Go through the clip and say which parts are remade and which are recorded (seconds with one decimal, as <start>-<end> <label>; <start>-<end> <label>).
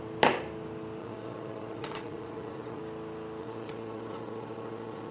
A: 0.0-1.0 recorded; 1.0-2.8 remade; 2.8-3.4 recorded; 3.4-5.1 remade